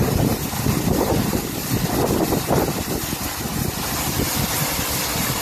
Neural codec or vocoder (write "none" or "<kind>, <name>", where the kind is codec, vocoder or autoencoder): none